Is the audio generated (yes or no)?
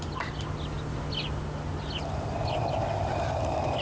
no